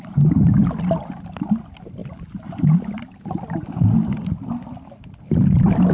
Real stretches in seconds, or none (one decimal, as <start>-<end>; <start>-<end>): 0.0-5.9